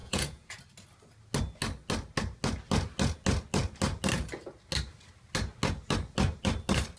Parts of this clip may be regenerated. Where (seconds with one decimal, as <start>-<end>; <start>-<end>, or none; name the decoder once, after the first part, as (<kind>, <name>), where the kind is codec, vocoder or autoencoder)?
0.0-0.6 (vocoder, Vocos)